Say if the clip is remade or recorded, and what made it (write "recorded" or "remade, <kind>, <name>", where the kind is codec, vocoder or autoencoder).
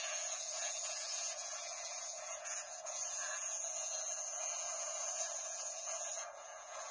remade, vocoder, Vocos